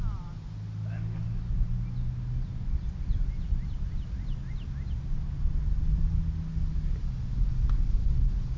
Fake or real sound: real